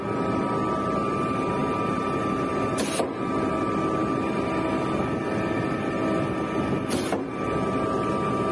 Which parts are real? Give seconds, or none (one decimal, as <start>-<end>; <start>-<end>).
0.0-8.5